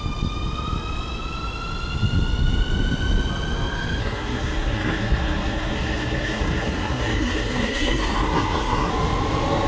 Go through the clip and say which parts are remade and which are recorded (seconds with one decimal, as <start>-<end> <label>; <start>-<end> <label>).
0.0-4.0 recorded; 4.0-8.9 remade; 8.9-9.7 recorded